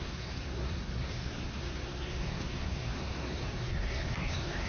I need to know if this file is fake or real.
fake